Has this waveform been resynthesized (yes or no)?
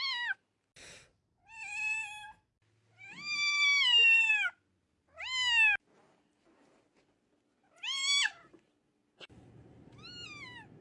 no